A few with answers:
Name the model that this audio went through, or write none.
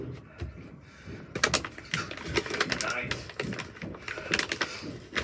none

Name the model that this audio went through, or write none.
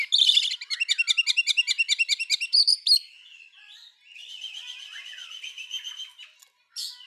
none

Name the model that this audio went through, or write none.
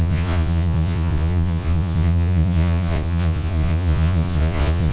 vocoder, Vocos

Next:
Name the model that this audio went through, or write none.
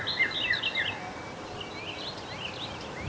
none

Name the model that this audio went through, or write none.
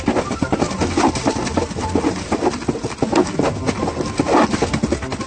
none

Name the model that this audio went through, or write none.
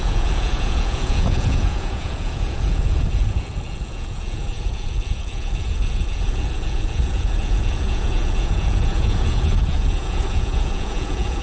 vocoder, Vocos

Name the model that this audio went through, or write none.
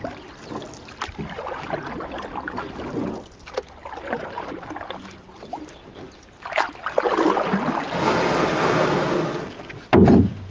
none